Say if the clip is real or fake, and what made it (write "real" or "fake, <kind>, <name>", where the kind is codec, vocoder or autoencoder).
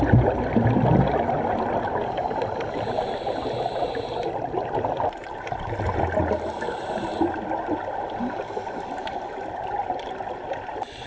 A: real